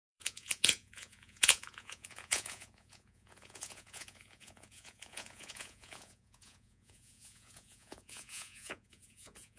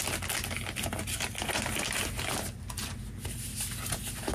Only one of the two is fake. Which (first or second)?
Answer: first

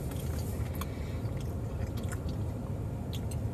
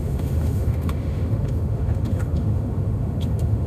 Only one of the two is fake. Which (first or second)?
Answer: second